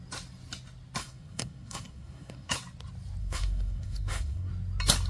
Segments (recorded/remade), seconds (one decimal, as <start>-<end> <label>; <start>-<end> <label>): 0.0-1.0 recorded; 1.0-2.5 remade; 2.5-3.2 recorded; 3.2-4.5 remade; 4.5-5.1 recorded